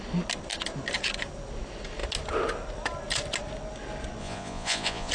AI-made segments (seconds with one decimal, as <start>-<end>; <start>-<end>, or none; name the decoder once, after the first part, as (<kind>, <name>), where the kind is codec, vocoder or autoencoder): 4.2-5.1 (vocoder, Vocos)